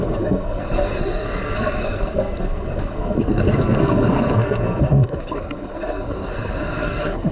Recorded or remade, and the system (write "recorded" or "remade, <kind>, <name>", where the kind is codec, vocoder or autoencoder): remade, codec, SNAC